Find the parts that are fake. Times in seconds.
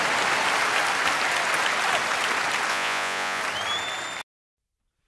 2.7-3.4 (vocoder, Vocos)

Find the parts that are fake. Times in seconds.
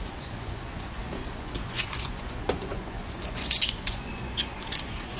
0.0-5.2 (vocoder, Vocos)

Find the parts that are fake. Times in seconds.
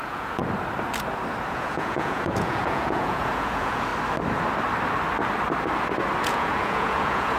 0.0-0.4 (vocoder, Vocos); 1.5-3.9; 6.2-7.4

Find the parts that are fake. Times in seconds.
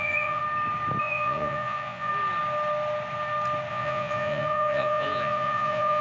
0.0-0.4 (vocoder, Vocos); 1.0-2.1; 3.7-6.0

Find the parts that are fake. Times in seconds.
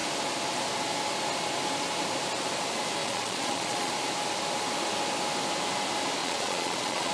3.0-3.9 (vocoder, Vocos); 6.2-7.1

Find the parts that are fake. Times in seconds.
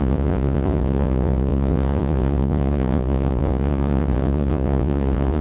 0.0-5.4 (vocoder, Vocos)